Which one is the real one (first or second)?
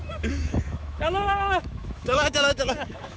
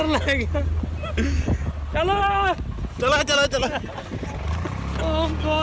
second